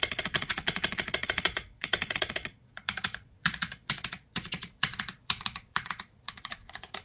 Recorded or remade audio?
remade